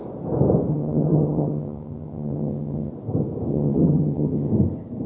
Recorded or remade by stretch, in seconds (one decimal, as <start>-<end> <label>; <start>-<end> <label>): 0.0-0.7 recorded; 0.7-2.9 remade; 2.9-3.5 recorded; 3.5-4.5 remade; 4.5-5.1 recorded